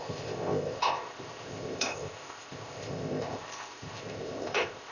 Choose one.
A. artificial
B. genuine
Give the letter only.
A